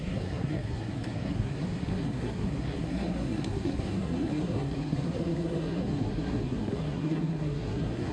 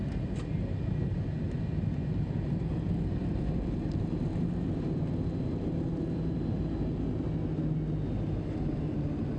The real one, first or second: second